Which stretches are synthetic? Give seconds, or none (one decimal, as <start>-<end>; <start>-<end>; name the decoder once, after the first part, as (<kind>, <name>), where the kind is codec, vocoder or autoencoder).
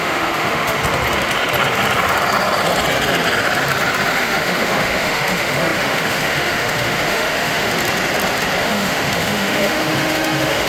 0.0-0.8 (autoencoder, DAC-VAE); 4.1-7.7; 8.6-10.7